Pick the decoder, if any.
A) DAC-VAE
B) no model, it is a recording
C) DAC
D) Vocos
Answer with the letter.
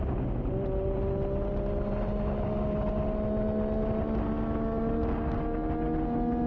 B